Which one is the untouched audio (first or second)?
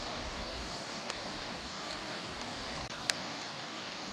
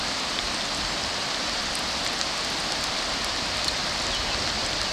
second